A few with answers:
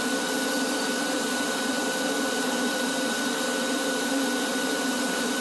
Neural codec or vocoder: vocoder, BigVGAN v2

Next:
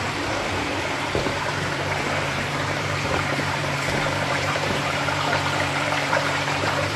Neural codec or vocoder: vocoder, BigVGAN v2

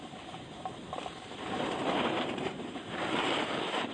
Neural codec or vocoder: vocoder, BigVGAN v2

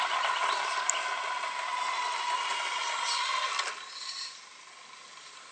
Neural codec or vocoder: none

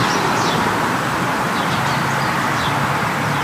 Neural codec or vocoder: vocoder, BigVGAN v2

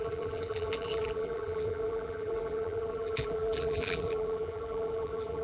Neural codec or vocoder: vocoder, BigVGAN v2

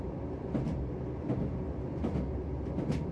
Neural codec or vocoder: none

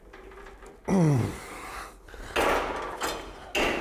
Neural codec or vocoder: none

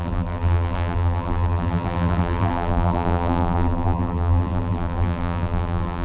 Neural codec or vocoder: vocoder, BigVGAN v2